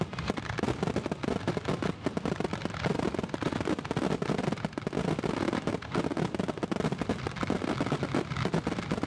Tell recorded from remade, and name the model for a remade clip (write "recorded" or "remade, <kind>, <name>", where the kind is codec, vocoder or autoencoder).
recorded